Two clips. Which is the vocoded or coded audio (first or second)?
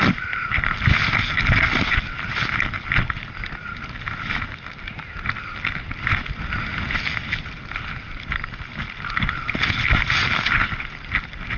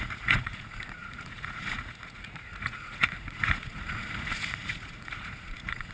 second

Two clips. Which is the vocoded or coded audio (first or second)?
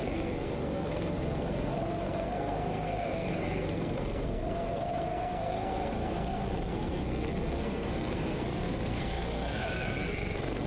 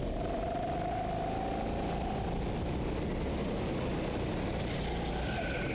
first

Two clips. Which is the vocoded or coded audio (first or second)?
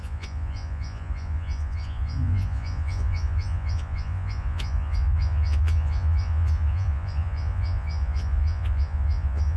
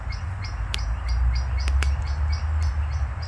first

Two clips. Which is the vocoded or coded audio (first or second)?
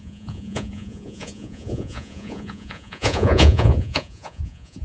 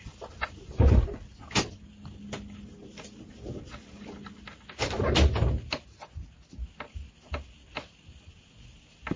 first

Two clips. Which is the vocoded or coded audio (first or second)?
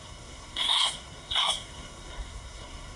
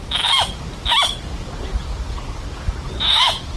first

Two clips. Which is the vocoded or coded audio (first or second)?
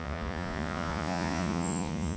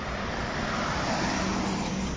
first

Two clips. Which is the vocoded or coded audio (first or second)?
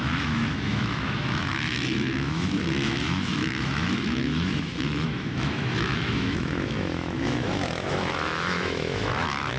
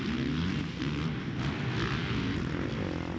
first